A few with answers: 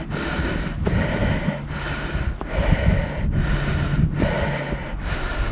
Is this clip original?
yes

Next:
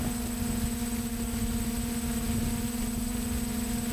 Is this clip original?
yes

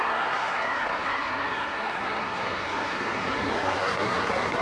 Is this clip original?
no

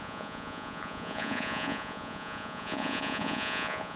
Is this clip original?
no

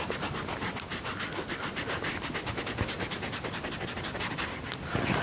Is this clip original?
yes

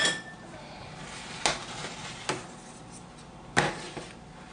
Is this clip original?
yes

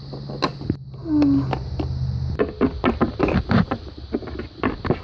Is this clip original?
yes